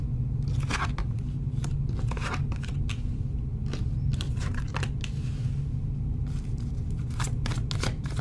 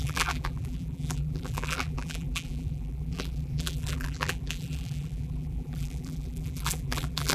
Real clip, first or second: first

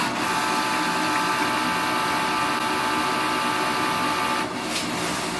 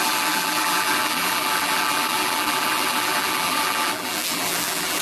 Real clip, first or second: first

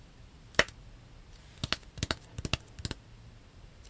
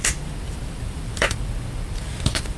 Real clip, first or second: first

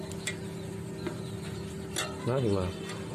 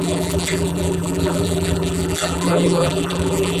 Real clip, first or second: first